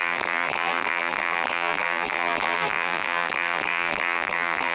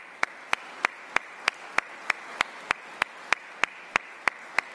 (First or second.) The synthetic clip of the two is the first